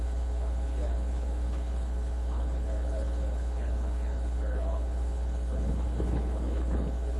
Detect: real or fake fake